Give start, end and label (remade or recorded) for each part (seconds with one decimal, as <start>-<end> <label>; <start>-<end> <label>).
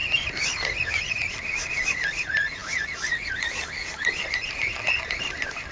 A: 0.0-5.7 recorded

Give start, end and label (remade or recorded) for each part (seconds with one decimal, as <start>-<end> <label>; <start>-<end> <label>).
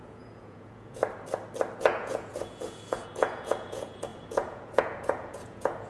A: 0.0-1.0 remade; 1.0-1.8 recorded; 1.8-5.9 remade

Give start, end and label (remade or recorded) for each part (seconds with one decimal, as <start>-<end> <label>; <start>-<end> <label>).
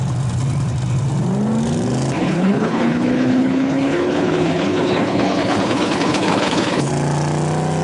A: 0.0-2.2 recorded; 2.2-6.9 remade; 6.9-7.8 recorded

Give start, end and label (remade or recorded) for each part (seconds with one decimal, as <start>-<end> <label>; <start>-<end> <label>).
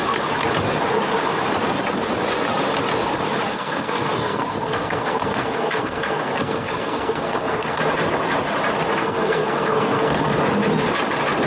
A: 0.0-3.5 recorded; 3.5-7.8 remade; 7.8-9.0 recorded; 9.0-10.4 remade; 10.4-11.5 recorded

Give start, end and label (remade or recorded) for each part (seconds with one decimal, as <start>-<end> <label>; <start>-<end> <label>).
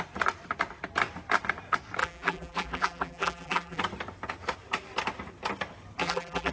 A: 0.0-2.0 recorded; 2.0-3.8 remade; 3.8-6.0 recorded; 6.0-6.5 remade